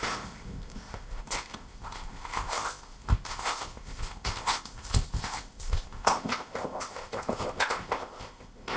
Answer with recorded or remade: remade